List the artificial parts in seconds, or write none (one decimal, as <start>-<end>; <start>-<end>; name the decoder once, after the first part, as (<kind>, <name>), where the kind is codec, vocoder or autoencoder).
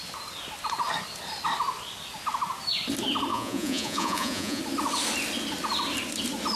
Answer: 3.3-4.6 (vocoder, Vocos)